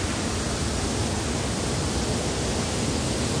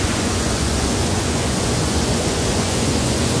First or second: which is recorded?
first